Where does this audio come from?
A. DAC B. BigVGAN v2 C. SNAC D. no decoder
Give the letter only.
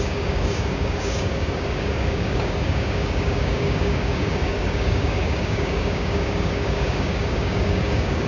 A